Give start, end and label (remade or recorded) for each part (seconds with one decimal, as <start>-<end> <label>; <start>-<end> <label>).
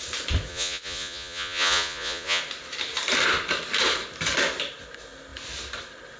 0.0-0.5 recorded; 0.5-2.4 remade; 2.4-6.2 recorded